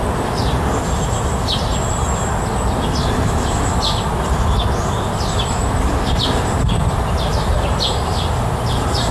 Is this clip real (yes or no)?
yes